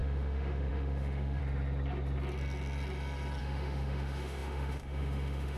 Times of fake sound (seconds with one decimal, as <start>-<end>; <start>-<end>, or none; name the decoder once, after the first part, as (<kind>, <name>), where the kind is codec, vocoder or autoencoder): 0.0-1.4 (autoencoder, DAC-VAE); 3.4-5.6